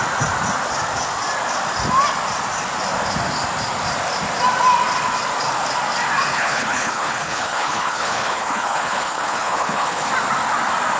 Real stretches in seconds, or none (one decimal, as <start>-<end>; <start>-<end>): 0.0-6.3; 10.1-11.0